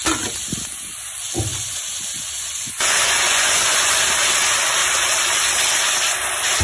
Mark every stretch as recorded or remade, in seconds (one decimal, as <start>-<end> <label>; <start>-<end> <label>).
0.0-1.5 recorded; 1.5-3.9 remade; 3.9-6.6 recorded